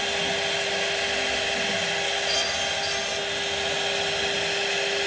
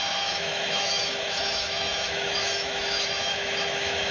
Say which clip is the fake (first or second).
second